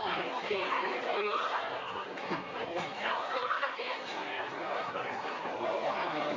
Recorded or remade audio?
remade